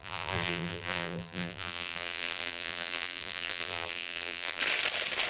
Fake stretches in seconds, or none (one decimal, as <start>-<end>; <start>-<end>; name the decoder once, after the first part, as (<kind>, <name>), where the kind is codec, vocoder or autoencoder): 0.0-4.6 (vocoder, BigVGAN v2)